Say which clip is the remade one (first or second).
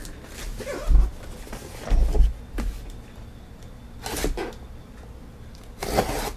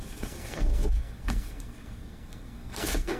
second